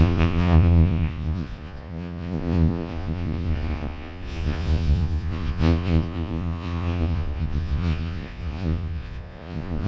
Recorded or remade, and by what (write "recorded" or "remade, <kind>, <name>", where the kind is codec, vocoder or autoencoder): remade, vocoder, Vocos